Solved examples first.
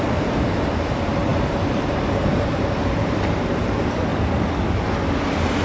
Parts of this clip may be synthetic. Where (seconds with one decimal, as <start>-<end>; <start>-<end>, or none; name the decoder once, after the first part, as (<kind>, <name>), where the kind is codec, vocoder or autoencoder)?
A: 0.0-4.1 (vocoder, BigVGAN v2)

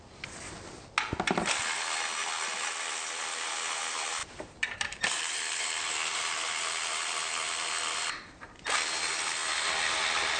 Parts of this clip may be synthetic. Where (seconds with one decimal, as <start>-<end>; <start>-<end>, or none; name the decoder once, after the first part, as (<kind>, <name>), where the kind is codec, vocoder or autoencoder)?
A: 4.2-5.2 (vocoder, BigVGAN v2)

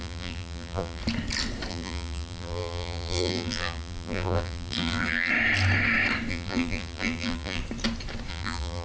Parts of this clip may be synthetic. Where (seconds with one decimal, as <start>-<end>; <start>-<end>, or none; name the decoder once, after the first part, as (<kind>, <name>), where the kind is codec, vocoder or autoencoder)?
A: 0.0-1.0 (vocoder, BigVGAN v2); 1.7-5.3; 6.3-7.6; 8.3-8.8

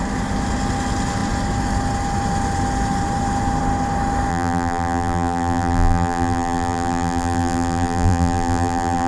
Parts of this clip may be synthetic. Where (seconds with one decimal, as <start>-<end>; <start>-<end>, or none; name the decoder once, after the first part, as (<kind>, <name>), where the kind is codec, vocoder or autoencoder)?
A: 4.3-9.1 (vocoder, BigVGAN v2)

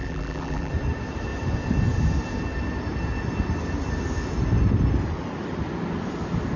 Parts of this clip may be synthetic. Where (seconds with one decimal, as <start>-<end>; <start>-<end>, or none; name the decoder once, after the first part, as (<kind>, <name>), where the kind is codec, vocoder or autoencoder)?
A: 0.0-0.7 (vocoder, BigVGAN v2)

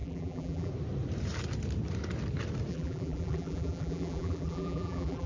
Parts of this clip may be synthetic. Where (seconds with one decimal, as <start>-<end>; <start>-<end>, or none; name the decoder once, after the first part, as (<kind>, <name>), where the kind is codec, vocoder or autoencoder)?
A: 0.0-0.7 (vocoder, BigVGAN v2); 2.7-5.3